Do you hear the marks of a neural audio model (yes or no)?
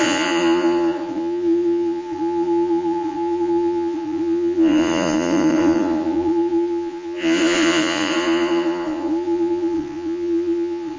yes